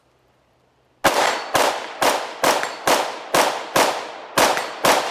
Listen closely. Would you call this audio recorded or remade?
recorded